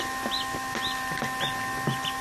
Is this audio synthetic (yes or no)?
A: no